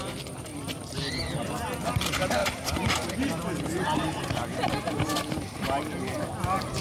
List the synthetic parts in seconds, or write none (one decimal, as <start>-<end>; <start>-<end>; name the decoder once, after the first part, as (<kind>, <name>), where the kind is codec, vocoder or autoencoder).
0.5-1.1 (vocoder, BigVGAN v2); 2.4-5.6